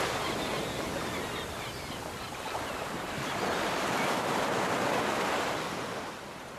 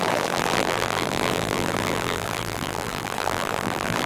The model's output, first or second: second